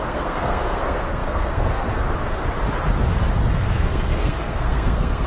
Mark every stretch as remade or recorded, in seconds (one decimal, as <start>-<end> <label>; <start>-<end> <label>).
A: 0.0-2.4 remade; 2.4-3.5 recorded; 3.5-5.3 remade